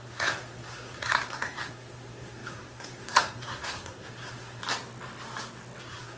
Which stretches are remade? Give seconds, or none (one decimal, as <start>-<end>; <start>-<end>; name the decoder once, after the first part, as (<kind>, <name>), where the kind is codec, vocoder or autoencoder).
0.0-4.6 (codec, SNAC); 5.8-6.2

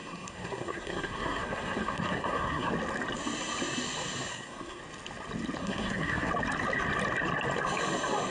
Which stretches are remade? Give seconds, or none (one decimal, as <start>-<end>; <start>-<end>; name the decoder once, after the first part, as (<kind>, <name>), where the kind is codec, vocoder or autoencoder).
0.0-2.7 (codec, SNAC); 4.3-4.8; 5.6-6.3

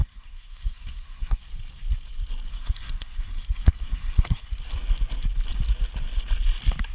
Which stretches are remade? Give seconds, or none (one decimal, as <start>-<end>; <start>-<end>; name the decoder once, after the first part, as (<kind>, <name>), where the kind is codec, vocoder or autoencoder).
0.0-1.4 (codec, SNAC); 2.5-4.5